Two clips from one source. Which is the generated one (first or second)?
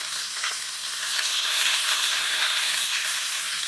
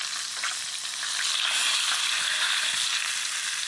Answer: first